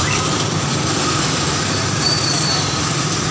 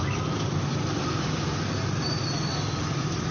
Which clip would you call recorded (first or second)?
second